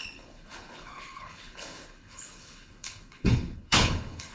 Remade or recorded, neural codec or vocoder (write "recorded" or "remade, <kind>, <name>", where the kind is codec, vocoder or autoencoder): remade, codec, HILCodec